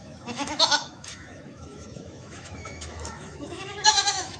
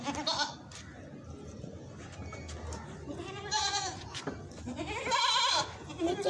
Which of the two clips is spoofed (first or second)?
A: first